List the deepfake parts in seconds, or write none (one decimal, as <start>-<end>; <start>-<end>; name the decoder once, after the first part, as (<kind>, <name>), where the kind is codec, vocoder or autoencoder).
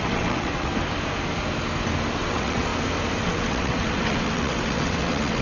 0.0-0.7 (vocoder, WaveNeXt); 2.1-2.7; 3.2-5.4